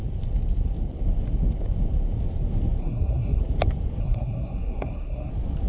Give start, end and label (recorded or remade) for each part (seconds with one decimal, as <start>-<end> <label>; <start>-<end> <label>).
0.0-2.8 recorded; 2.8-3.4 remade; 3.4-4.0 recorded; 4.0-5.3 remade; 5.3-5.7 recorded